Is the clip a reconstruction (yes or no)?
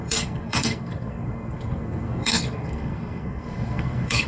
yes